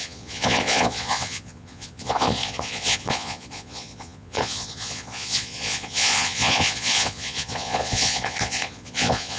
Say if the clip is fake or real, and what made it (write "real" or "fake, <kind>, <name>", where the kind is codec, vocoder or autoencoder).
fake, vocoder, Vocos